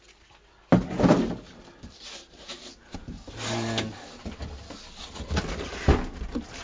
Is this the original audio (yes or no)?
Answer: yes